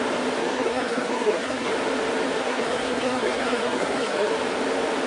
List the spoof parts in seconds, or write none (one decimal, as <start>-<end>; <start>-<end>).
0.4-1.7; 2.4-4.3